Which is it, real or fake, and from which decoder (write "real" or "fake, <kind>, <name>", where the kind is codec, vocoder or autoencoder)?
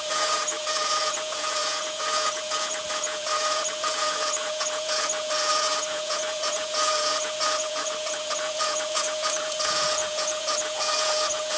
fake, vocoder, Vocos